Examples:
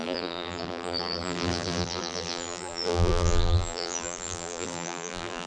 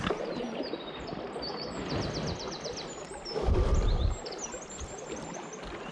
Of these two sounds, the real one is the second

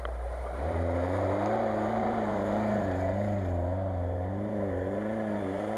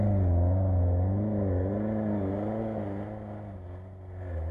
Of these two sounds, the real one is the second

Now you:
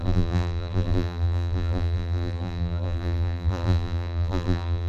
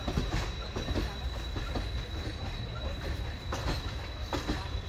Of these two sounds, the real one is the second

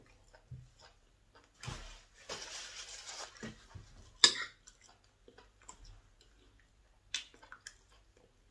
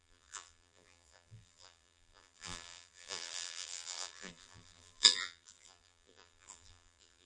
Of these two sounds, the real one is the first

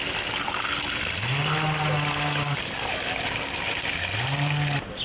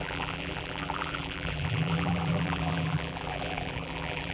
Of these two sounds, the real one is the first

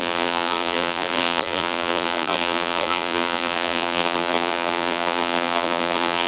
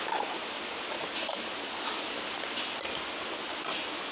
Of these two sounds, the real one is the second